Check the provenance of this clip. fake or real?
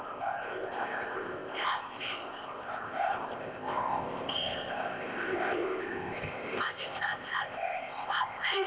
fake